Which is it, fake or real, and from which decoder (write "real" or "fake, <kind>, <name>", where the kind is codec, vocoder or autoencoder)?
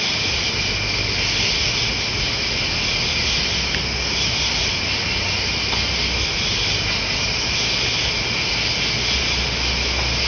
real